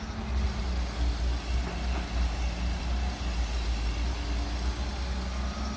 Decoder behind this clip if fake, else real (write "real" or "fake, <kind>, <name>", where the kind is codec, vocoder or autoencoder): real